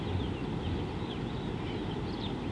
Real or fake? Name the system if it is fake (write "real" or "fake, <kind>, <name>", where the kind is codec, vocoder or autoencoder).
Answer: real